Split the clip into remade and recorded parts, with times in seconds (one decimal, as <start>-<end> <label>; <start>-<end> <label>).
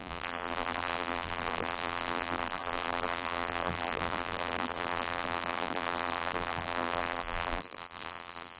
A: 0.0-8.6 remade